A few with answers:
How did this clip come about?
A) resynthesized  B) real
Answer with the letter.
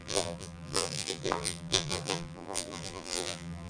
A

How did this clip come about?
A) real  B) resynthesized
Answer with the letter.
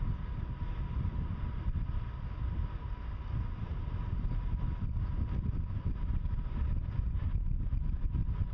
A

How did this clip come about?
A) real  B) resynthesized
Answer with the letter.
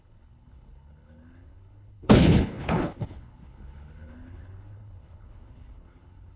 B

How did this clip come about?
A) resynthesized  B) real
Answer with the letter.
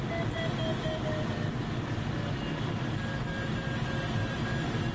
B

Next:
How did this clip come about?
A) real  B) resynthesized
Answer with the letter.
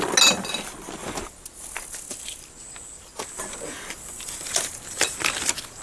A